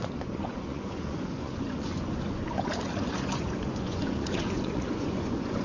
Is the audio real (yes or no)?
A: no